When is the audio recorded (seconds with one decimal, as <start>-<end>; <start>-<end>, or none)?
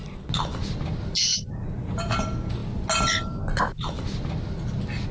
0.0-1.3; 2.1-5.1